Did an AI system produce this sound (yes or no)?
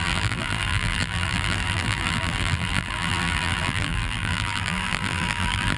yes